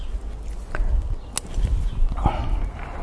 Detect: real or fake real